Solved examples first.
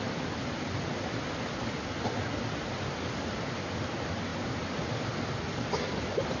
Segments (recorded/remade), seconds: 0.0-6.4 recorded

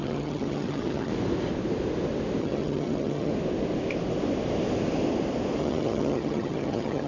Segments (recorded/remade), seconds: 0.0-1.1 remade; 1.1-2.4 recorded; 2.4-3.3 remade; 3.3-5.6 recorded; 5.6-7.1 remade

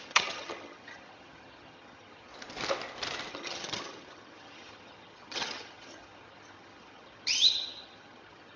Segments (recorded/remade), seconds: 0.0-2.3 remade; 2.3-3.3 recorded; 3.3-8.6 remade